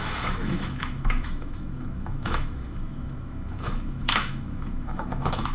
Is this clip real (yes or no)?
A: no